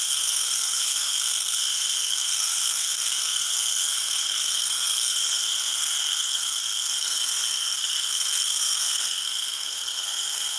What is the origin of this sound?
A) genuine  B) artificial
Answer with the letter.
B